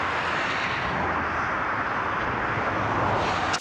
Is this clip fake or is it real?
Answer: real